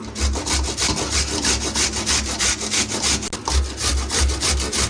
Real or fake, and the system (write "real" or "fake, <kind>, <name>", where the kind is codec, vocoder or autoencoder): real